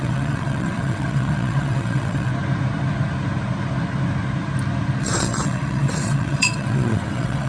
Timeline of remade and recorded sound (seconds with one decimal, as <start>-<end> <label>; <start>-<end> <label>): 0.0-2.3 remade; 2.3-5.0 recorded; 5.0-7.5 remade